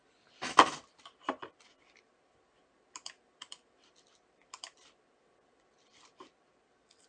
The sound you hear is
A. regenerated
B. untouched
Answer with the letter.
A